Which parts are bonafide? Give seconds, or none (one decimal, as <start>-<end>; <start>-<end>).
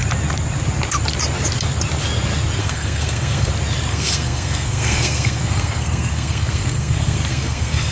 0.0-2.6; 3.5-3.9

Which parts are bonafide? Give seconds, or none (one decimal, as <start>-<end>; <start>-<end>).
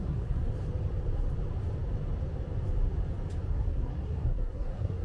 0.5-3.5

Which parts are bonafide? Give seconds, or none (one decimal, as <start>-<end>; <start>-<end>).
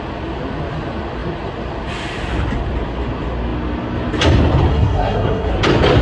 0.0-4.7; 5.5-6.0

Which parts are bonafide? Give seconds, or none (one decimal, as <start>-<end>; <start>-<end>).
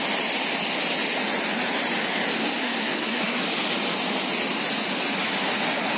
0.0-2.6; 3.4-6.0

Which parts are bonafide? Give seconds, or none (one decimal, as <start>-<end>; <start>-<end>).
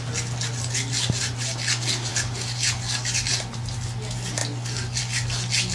0.0-5.7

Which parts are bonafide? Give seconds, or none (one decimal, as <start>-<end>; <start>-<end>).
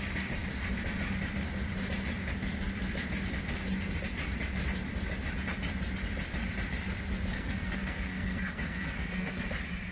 0.0-7.3; 9.5-9.9